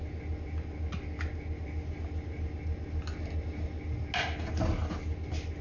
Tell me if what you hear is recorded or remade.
recorded